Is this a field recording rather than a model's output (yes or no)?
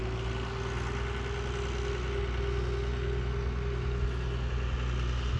yes